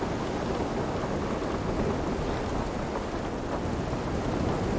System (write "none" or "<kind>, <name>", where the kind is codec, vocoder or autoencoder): none